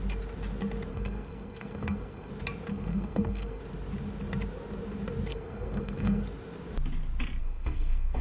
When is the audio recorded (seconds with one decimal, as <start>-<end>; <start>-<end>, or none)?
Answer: 0.0-0.9; 2.3-2.7; 3.6-5.3; 6.2-7.4